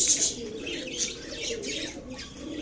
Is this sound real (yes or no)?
yes